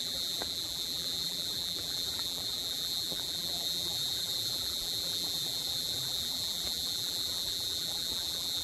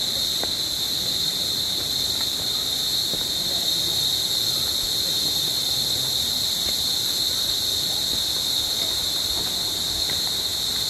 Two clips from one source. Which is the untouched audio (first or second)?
second